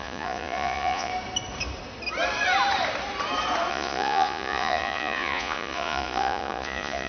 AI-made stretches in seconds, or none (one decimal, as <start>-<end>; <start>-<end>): 0.0-1.1; 3.7-7.1